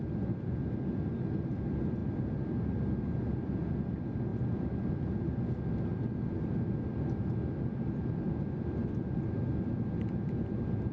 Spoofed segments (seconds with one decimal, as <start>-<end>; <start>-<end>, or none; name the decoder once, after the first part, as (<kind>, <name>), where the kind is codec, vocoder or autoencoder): none